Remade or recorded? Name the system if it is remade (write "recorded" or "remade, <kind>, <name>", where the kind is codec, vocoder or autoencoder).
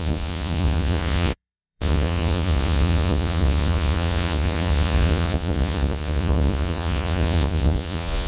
remade, vocoder, Vocos